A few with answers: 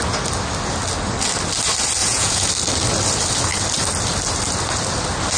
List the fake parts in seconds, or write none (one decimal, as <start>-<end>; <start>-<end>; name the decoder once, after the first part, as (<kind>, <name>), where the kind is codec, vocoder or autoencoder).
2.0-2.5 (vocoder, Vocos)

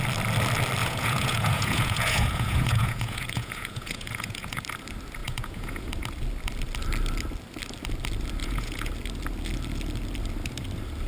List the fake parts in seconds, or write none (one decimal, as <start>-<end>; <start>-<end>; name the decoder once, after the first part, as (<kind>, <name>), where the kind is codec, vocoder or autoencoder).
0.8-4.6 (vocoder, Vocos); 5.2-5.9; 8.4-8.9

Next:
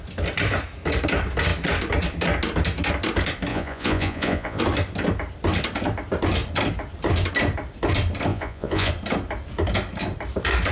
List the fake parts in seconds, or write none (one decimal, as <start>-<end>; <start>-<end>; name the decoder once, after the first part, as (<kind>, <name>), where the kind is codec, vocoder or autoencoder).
3.5-4.6 (vocoder, Vocos); 8.3-8.9